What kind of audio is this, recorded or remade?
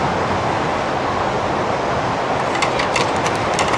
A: recorded